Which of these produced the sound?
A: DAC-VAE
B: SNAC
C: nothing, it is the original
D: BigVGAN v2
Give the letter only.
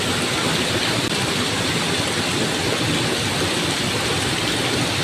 C